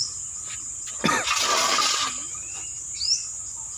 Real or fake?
real